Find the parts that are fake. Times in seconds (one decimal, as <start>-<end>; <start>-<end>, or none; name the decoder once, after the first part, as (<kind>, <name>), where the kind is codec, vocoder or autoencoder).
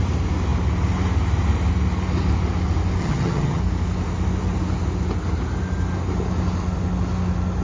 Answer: 3.0-3.6 (vocoder, HiFi-GAN)